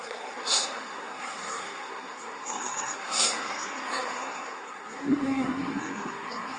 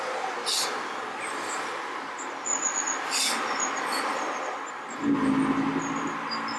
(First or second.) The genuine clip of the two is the second